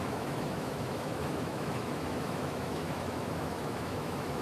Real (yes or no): no